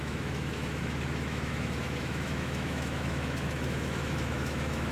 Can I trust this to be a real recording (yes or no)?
no